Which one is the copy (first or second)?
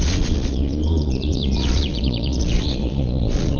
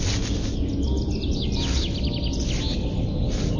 first